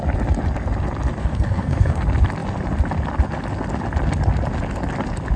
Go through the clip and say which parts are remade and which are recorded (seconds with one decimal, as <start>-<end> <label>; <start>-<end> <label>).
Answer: 0.0-1.2 recorded; 1.2-2.0 remade; 2.0-5.4 recorded